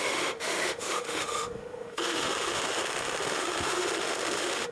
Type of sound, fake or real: fake